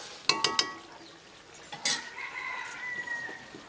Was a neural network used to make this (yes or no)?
no